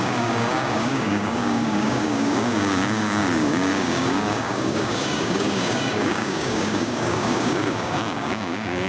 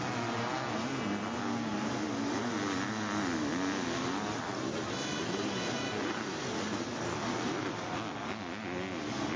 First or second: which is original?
second